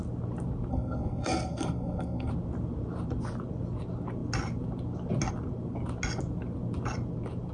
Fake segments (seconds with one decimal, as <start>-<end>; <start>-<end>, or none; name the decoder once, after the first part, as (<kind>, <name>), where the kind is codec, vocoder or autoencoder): 0.7-2.3 (codec, SNAC)